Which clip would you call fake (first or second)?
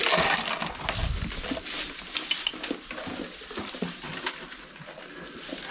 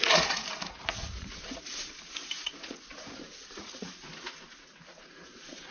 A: second